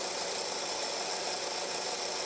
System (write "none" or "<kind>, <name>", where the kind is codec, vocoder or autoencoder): none